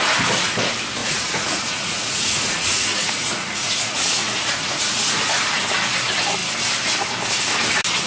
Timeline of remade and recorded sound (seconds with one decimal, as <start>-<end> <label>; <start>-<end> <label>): 0.0-1.0 recorded; 1.0-5.6 remade; 5.6-8.1 recorded